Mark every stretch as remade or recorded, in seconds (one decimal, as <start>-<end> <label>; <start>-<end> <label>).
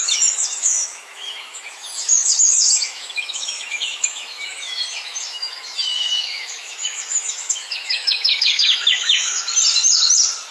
0.0-9.5 remade; 9.5-10.5 recorded